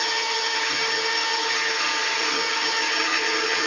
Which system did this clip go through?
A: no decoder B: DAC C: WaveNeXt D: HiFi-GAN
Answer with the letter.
D